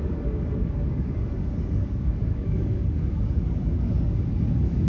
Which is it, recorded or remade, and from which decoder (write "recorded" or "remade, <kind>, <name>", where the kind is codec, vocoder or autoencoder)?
remade, codec, DAC